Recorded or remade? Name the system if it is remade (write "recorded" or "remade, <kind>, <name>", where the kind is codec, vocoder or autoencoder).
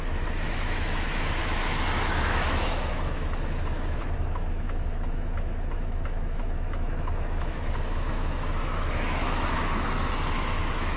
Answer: remade, autoencoder, DAC-VAE